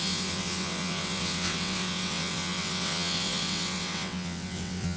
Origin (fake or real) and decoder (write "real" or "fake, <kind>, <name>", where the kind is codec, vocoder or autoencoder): fake, vocoder, WaveNeXt